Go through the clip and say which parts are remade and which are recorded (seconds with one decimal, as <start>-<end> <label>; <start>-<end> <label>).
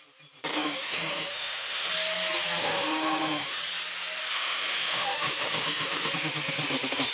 0.0-0.5 recorded; 0.5-1.9 remade; 1.9-2.6 recorded; 2.6-3.6 remade; 3.6-4.2 recorded; 4.2-6.1 remade; 6.1-7.1 recorded